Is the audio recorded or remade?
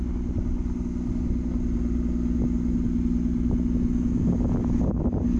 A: recorded